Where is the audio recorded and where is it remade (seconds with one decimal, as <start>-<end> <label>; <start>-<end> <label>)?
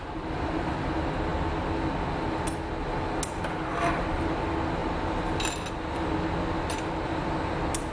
0.0-7.9 recorded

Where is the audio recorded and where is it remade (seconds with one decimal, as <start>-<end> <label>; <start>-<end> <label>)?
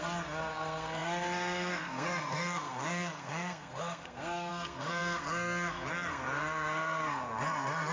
0.0-7.9 remade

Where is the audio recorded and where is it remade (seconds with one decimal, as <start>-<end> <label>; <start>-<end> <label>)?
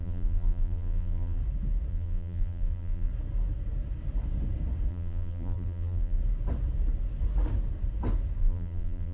0.0-1.4 remade; 1.4-1.9 recorded; 1.9-3.1 remade; 3.1-4.9 recorded; 4.9-6.2 remade; 6.2-8.4 recorded; 8.4-9.1 remade